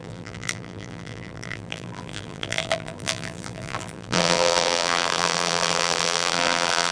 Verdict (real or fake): fake